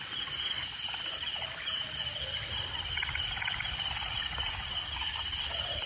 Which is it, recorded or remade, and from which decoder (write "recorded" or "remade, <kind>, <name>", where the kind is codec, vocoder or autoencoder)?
recorded